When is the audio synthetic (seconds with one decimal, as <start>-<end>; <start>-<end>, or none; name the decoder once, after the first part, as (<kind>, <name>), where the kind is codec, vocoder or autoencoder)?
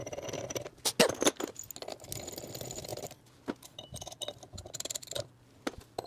none